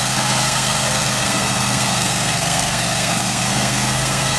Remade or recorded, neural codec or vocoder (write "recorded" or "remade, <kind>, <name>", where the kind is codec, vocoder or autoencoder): remade, codec, SNAC